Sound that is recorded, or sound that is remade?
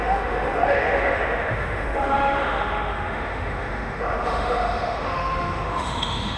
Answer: remade